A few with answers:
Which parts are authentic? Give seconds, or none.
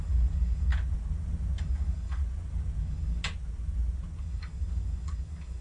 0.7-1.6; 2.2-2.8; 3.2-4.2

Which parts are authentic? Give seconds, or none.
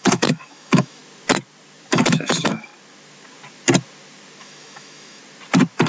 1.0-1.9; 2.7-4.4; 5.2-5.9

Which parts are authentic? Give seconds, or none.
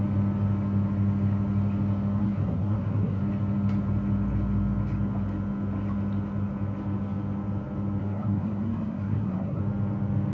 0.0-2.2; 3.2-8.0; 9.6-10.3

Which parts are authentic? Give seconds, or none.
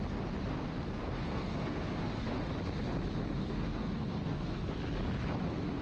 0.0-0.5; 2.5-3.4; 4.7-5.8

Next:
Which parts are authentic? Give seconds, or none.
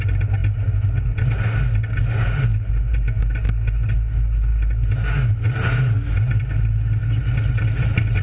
0.0-8.2